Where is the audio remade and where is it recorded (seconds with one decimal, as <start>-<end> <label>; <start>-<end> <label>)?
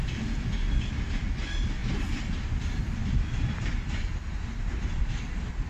0.0-5.7 recorded